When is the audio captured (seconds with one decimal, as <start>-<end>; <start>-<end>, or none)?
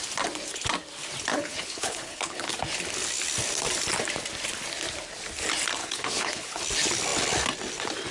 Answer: 0.0-1.3; 2.5-5.8; 6.6-8.1